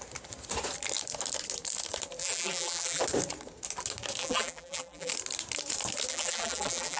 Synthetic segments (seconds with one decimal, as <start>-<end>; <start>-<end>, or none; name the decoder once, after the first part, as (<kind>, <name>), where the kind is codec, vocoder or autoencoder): 2.2-3.0 (vocoder, BigVGAN v2); 4.2-5.1; 6.1-7.0